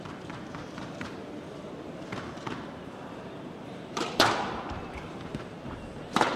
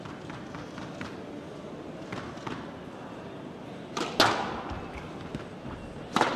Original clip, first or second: second